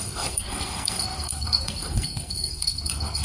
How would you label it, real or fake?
fake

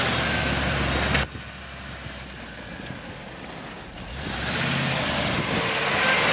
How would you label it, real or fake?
real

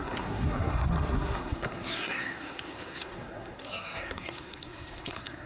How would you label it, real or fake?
fake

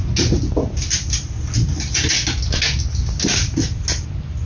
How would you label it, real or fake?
real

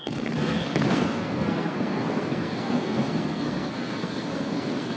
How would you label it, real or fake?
fake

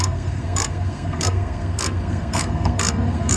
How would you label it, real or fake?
fake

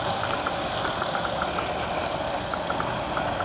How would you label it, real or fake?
real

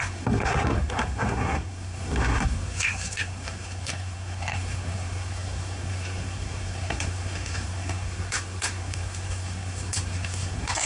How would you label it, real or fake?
fake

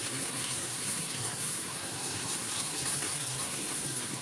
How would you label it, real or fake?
fake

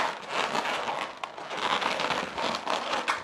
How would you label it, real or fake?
real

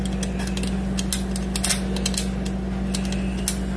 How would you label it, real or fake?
real